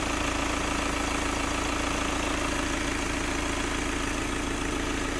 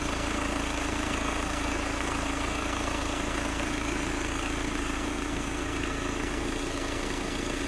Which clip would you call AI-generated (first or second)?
second